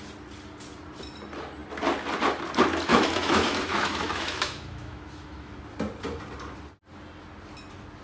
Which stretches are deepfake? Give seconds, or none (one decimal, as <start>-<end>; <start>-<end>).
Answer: 2.9-5.6